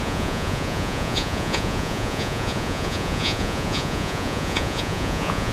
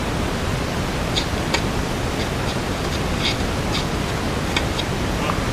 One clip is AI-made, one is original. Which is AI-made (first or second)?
first